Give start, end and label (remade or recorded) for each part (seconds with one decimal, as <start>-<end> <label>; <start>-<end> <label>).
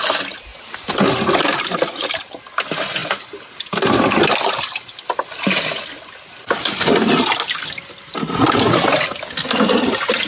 0.0-10.3 recorded